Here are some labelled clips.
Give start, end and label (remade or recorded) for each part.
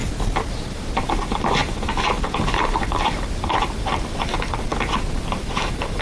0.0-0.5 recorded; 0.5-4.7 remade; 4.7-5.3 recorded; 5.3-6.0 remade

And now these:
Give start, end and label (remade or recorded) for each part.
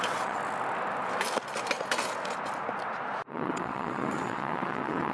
0.0-0.4 remade; 0.4-3.3 recorded; 3.3-5.1 remade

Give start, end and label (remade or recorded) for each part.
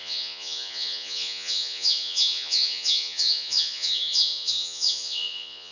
0.0-5.7 remade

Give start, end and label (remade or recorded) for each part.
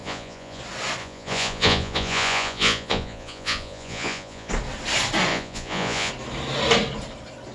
0.0-0.6 remade; 0.6-1.0 recorded; 1.0-4.5 remade; 4.5-5.3 recorded; 5.3-6.1 remade; 6.1-7.5 recorded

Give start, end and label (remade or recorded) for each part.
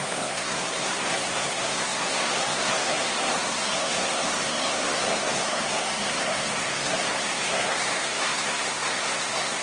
0.0-9.6 remade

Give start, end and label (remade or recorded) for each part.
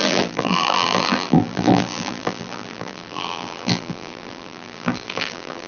0.0-5.7 remade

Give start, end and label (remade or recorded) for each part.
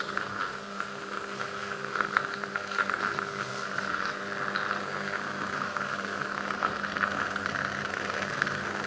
0.0-4.2 remade; 4.2-4.8 recorded; 4.8-8.9 remade